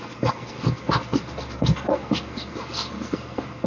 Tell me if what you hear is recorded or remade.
remade